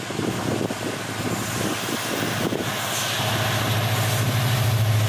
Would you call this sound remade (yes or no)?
no